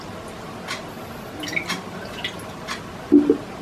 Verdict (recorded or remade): recorded